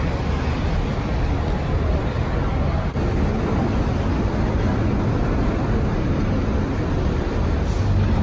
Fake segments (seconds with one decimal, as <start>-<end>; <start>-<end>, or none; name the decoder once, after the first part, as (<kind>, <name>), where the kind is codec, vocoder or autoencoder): none